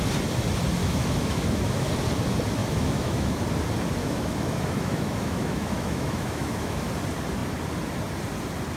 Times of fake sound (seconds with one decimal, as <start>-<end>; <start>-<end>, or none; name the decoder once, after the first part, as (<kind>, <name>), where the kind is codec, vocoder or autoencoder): 0.8-1.9 (autoencoder, DAC-VAE); 2.6-3.4; 4.0-6.9

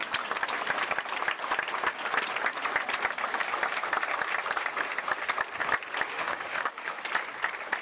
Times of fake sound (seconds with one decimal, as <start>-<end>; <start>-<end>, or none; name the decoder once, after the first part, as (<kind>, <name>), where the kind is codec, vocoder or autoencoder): 6.1-7.0 (autoencoder, DAC-VAE)

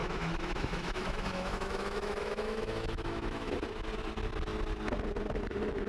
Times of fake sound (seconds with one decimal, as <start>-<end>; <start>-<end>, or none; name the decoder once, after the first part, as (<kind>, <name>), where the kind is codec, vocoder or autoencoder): 0.0-3.5 (autoencoder, DAC-VAE)

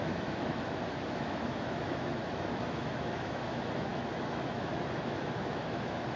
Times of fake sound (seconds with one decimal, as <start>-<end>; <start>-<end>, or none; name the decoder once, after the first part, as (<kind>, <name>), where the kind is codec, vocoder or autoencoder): 0.0-6.2 (autoencoder, DAC-VAE)

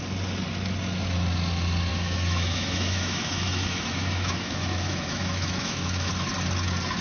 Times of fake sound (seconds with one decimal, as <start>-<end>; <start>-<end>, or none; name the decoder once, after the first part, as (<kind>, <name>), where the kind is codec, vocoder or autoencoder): 1.9-6.1 (autoencoder, DAC-VAE)

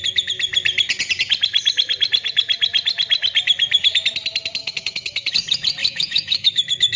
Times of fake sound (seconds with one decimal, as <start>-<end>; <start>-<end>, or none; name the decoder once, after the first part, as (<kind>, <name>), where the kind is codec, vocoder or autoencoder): 4.6-5.3 (autoencoder, DAC-VAE); 5.8-7.0